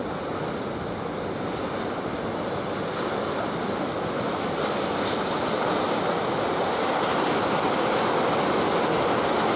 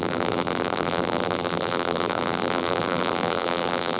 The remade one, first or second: second